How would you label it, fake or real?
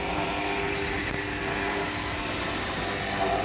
real